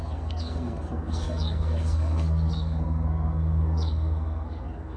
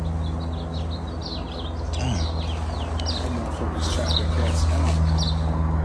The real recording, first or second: second